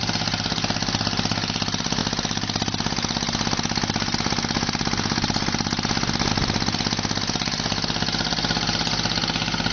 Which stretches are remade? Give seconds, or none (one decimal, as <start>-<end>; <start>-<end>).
none